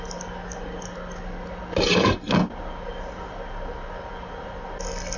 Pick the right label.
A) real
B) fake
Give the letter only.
A